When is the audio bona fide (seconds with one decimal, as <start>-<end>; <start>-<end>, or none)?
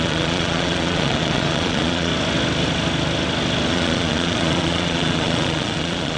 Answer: 2.1-3.7